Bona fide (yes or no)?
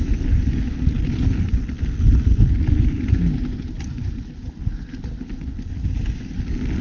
yes